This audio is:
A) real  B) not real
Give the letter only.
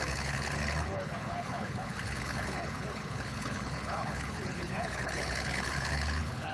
B